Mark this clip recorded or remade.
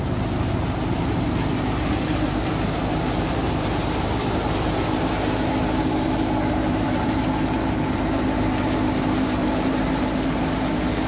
remade